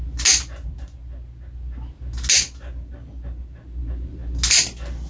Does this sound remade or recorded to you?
recorded